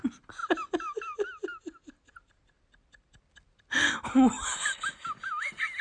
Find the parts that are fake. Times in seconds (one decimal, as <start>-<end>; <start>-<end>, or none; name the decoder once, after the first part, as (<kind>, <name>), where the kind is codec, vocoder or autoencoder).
none